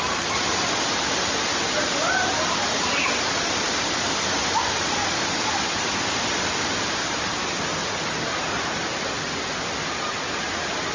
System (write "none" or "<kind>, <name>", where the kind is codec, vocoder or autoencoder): none